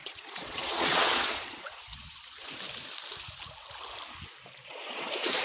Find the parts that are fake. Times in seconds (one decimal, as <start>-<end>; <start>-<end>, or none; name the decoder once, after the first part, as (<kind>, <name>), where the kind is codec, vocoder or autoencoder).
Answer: 0.0-2.6 (vocoder, Vocos); 4.6-5.4